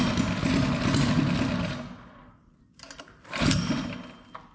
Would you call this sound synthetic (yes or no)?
no